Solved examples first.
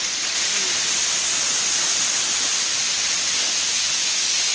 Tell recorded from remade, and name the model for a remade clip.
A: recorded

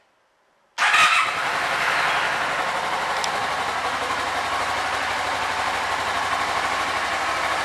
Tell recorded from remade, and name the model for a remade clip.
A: recorded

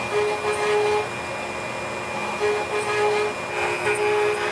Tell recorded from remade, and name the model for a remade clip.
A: recorded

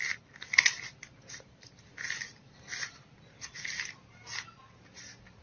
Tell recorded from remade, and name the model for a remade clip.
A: recorded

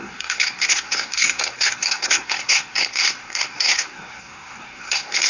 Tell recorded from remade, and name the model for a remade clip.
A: remade, codec, SNAC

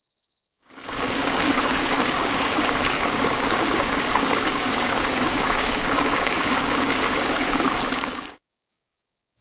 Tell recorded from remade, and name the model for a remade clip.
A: remade, codec, DAC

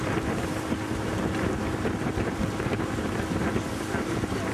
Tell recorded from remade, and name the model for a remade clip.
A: remade, vocoder, BigVGAN v2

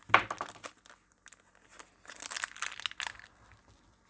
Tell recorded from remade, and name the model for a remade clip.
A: recorded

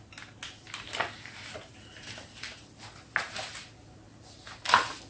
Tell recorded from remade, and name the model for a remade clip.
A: recorded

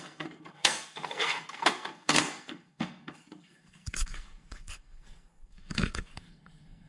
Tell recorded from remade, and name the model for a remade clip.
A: remade, codec, SNAC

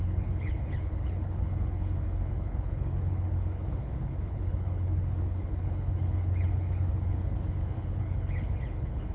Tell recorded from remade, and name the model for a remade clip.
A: remade, codec, HILCodec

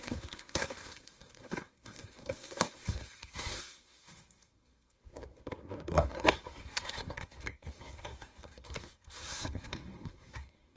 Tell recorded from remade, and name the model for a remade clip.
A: remade, codec, SNAC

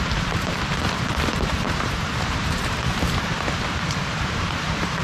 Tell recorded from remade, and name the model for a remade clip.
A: remade, vocoder, BigVGAN v2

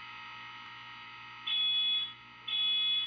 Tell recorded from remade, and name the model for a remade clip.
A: recorded